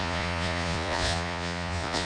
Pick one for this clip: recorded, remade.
remade